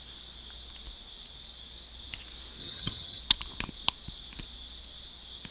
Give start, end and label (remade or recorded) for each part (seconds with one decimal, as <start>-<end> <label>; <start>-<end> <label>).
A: 0.0-2.6 recorded; 2.6-3.2 remade; 3.2-5.5 recorded